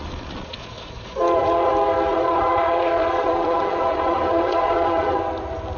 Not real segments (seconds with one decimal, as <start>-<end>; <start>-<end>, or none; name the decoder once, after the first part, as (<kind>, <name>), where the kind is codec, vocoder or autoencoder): 0.0-1.7 (vocoder, Vocos); 2.1-5.2